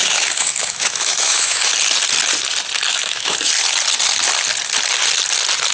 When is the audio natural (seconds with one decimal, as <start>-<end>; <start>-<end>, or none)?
1.7-2.9; 3.5-5.7